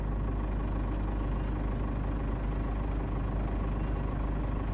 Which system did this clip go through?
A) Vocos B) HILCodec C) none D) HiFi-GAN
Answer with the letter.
C